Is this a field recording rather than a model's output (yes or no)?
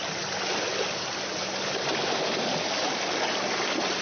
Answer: yes